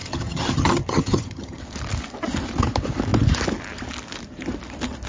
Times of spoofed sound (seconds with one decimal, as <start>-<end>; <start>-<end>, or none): 0.0-1.6